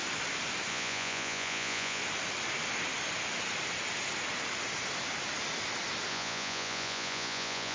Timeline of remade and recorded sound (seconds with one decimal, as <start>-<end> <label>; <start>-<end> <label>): 0.0-0.7 recorded; 0.7-2.0 remade; 2.0-6.1 recorded; 6.1-7.7 remade